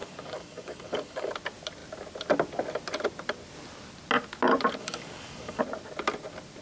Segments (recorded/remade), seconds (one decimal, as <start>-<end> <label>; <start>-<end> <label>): 0.0-1.3 remade; 1.3-4.8 recorded; 4.8-5.6 remade; 5.6-6.6 recorded